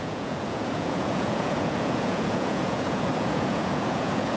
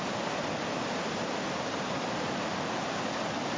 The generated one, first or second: first